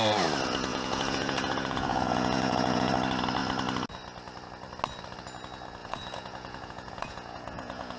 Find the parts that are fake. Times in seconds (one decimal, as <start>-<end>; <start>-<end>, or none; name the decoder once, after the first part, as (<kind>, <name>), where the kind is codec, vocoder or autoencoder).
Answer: 0.7-2.9 (vocoder, Vocos); 5.8-8.0